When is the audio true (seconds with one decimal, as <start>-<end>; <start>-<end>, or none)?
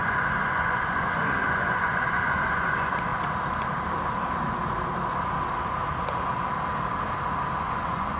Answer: 3.1-7.6